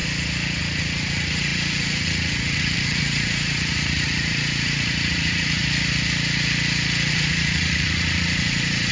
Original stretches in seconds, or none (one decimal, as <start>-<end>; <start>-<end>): 0.0-0.6; 5.6-7.1